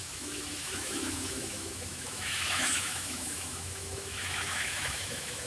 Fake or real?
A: fake